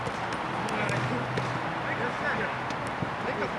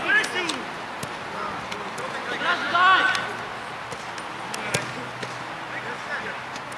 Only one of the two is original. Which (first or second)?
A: second